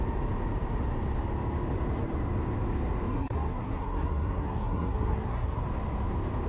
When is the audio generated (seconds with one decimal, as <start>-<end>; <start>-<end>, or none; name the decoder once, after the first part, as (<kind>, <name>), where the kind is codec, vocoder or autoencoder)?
3.1-5.6 (codec, SNAC)